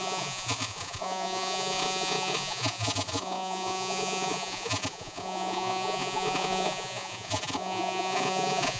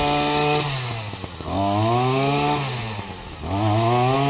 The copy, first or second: first